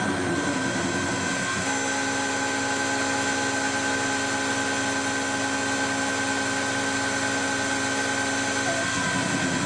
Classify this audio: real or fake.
real